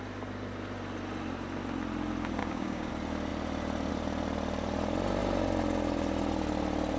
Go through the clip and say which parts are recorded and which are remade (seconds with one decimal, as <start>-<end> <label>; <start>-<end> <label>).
0.0-2.4 recorded; 2.4-2.9 remade; 2.9-7.0 recorded